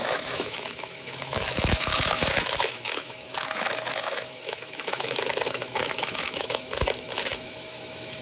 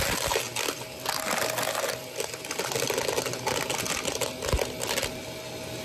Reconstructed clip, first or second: first